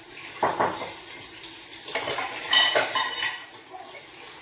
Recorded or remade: remade